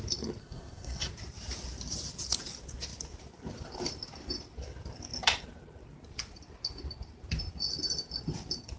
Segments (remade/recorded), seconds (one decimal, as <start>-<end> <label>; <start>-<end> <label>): 0.0-0.4 recorded; 0.4-1.1 remade; 1.1-8.8 recorded